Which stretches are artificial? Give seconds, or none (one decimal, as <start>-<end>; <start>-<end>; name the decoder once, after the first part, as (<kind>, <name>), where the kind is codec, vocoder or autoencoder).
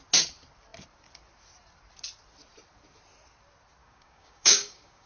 3.8-5.1 (codec, DAC)